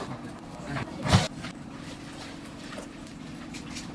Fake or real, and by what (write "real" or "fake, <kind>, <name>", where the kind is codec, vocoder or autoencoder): fake, vocoder, BigVGAN v2